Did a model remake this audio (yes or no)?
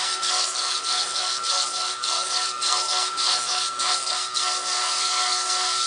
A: yes